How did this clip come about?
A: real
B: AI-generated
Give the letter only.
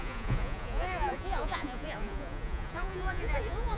B